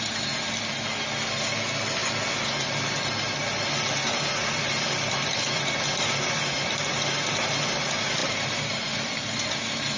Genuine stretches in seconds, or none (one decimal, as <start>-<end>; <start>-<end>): 0.0-8.2